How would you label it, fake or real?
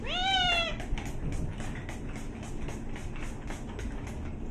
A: real